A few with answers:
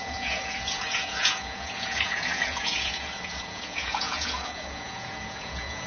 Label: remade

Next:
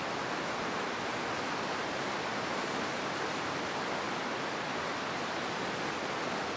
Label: recorded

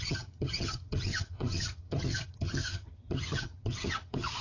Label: remade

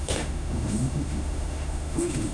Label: remade